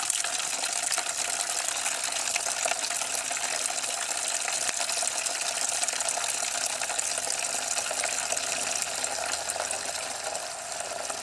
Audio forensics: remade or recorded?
recorded